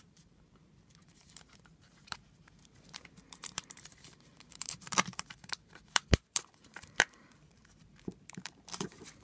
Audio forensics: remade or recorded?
remade